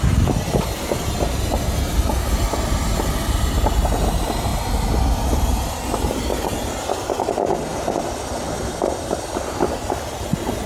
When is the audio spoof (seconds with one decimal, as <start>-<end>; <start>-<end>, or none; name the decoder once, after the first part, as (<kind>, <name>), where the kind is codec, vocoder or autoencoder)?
none